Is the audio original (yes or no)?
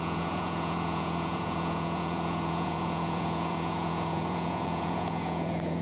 no